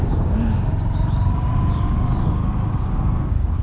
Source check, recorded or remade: remade